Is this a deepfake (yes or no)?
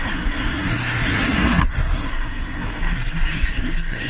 yes